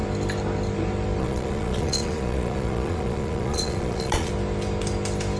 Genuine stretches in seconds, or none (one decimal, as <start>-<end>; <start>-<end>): 0.0-1.2; 4.3-5.4